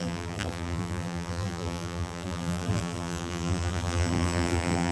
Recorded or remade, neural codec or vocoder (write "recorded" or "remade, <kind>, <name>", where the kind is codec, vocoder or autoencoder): remade, vocoder, BigVGAN v2